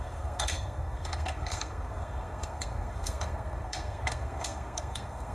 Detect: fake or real fake